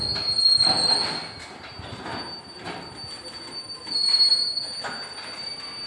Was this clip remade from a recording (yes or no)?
no